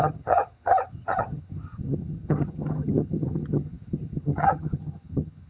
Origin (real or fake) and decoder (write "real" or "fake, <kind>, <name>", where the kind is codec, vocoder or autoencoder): fake, vocoder, HiFi-GAN